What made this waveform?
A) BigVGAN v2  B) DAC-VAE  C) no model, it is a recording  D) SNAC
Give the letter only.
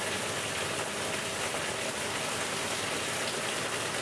C